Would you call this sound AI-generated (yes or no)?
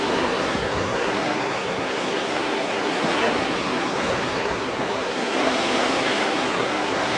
yes